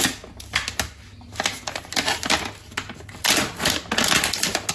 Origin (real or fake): real